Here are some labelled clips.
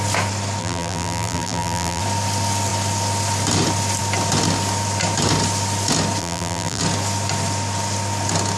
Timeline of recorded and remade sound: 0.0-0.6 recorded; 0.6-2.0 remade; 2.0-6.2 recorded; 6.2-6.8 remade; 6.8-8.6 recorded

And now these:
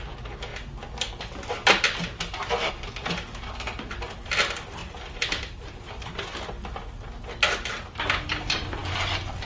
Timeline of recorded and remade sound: 0.0-0.5 remade; 0.5-2.7 recorded; 2.7-6.3 remade; 6.3-8.2 recorded; 8.2-8.8 remade; 8.8-9.5 recorded